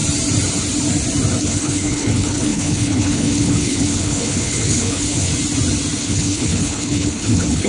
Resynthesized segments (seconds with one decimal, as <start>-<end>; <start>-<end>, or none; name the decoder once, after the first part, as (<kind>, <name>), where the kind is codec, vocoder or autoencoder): 1.4-5.3 (codec, HILCodec); 6.0-7.7